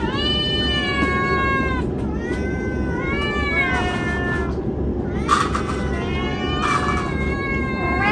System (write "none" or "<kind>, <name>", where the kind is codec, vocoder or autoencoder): none